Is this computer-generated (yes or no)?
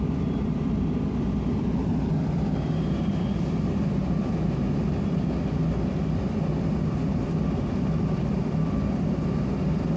yes